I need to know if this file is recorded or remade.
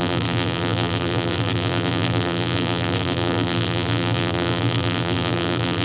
remade